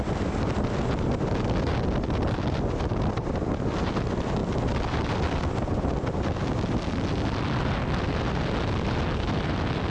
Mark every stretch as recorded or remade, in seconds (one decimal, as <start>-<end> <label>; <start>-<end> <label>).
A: 0.0-9.9 recorded